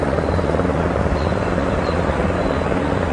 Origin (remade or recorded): remade